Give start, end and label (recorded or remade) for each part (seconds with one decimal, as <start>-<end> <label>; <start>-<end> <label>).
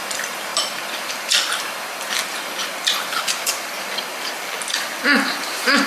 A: 0.0-5.9 remade